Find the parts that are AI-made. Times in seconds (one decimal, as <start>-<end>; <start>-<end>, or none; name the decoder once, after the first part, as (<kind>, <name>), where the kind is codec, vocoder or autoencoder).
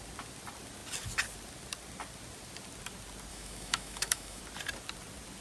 3.3-4.4 (autoencoder, DAC-VAE)